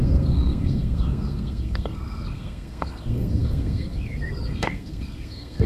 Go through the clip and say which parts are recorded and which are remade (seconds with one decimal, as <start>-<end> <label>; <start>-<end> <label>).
0.0-5.7 remade